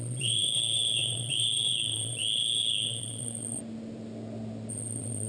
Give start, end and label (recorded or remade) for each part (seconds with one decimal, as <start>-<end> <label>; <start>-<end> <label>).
0.0-3.6 remade; 3.6-4.7 recorded; 4.7-5.3 remade